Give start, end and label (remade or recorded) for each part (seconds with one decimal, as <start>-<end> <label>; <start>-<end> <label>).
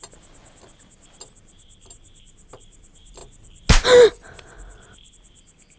0.0-5.8 recorded